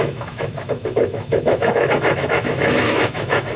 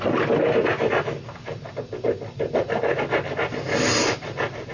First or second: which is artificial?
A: first